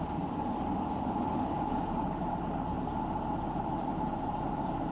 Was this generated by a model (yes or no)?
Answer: yes